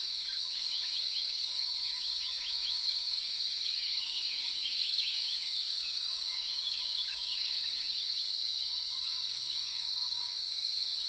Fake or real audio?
fake